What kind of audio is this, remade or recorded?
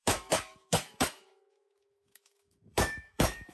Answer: remade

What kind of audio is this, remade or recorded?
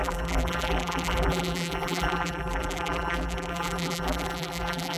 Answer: remade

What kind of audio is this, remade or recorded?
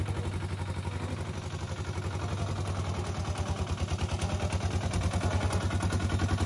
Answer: recorded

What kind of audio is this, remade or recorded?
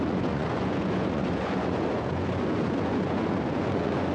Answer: remade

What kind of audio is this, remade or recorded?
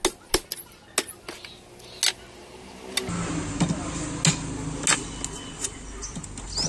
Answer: recorded